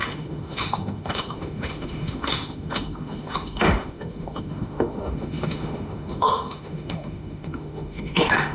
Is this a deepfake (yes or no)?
yes